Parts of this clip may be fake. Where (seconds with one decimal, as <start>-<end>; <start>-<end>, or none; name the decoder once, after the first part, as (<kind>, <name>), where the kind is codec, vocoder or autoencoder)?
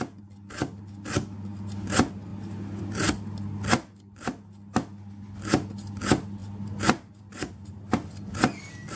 none